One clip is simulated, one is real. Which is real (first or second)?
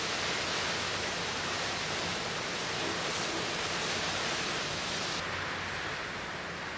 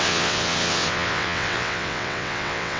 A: first